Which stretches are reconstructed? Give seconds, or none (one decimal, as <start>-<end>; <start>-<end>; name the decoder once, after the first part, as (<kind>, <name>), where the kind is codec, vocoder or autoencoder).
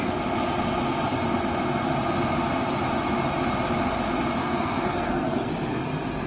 4.4-5.5 (codec, SNAC)